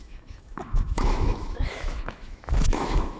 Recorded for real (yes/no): no